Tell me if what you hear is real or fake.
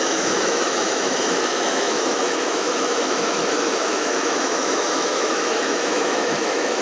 fake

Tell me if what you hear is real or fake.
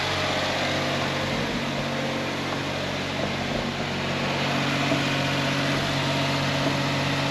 real